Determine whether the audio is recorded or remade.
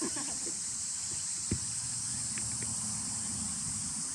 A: remade